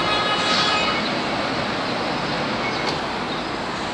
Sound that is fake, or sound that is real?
real